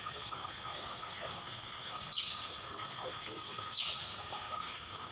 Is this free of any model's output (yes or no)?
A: no